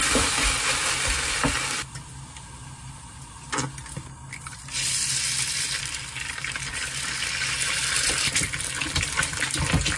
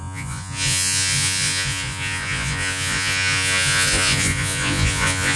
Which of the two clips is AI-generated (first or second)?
second